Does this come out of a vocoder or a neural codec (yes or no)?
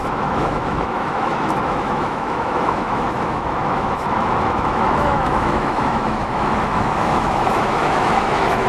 yes